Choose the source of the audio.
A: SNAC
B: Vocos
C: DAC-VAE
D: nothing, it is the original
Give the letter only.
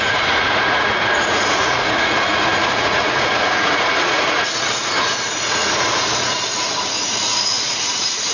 B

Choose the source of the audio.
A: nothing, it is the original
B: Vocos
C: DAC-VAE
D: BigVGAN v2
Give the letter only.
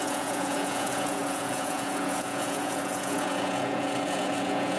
B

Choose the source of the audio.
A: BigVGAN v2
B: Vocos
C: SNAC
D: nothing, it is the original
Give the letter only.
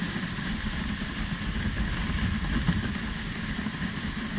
D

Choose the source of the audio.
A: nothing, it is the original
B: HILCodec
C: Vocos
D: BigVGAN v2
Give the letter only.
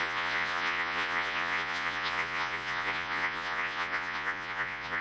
C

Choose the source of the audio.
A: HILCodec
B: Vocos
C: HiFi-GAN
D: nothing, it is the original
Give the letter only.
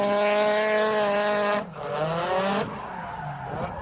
D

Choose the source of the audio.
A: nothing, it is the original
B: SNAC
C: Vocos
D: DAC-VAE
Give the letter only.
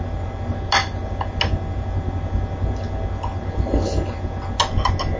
A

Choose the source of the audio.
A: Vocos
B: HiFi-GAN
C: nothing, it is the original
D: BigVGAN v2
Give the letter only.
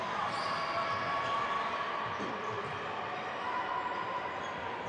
C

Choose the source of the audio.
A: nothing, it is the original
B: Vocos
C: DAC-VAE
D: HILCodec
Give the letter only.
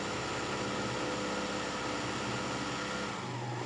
A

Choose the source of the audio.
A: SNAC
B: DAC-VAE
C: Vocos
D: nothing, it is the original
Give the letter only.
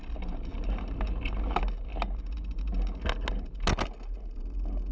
D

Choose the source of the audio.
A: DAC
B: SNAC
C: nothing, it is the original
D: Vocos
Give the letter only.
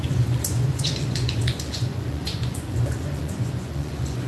D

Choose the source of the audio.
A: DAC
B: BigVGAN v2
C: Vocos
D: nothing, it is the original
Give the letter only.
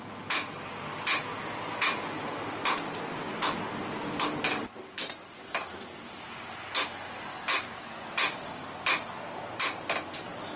D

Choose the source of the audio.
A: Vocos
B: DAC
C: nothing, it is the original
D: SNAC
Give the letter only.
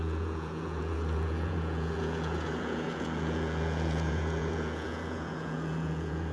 A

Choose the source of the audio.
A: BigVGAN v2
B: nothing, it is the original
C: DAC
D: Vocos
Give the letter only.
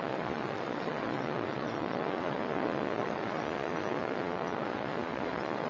D